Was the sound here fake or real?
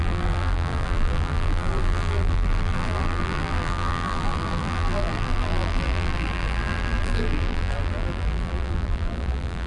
fake